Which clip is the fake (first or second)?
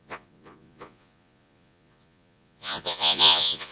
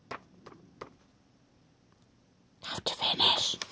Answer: first